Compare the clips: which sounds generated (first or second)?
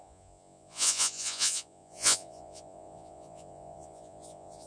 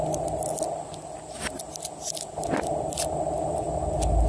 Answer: first